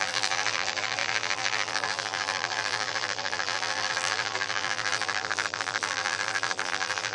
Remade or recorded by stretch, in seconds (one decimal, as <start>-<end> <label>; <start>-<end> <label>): 0.0-7.1 remade